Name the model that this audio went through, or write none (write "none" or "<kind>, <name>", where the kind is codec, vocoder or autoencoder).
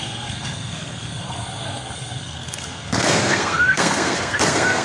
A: codec, SNAC